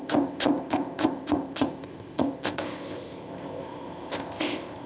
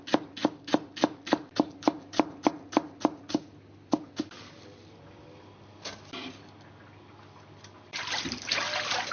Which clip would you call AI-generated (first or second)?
first